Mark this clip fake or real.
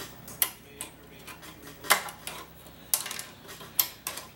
real